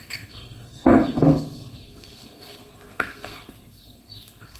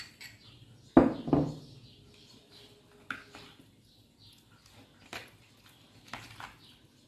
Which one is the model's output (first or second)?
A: first